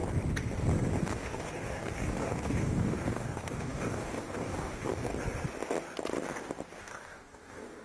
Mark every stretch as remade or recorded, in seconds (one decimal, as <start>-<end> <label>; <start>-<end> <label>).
0.0-1.0 recorded; 1.0-5.1 remade; 5.1-6.8 recorded; 6.8-7.8 remade